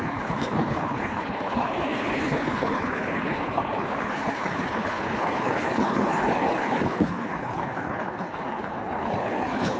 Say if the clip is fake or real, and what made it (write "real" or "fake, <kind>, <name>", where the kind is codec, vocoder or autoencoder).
fake, codec, HILCodec